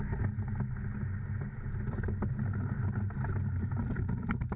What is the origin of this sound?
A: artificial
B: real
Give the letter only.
B